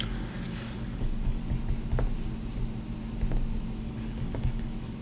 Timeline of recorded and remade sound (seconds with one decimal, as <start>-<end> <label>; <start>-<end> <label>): 0.0-1.4 remade; 1.4-3.8 recorded; 3.8-5.0 remade